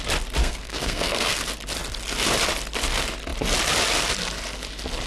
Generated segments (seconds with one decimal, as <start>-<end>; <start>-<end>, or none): 0.4-1.4